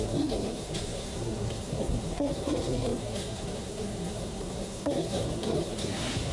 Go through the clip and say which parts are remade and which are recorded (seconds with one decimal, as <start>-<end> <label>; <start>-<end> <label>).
0.0-6.3 remade